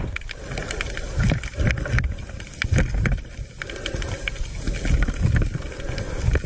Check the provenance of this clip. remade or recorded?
recorded